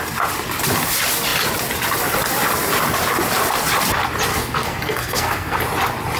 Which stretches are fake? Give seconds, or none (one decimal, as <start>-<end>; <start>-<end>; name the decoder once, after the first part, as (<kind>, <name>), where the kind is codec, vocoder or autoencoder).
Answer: 4.3-5.6 (codec, SNAC)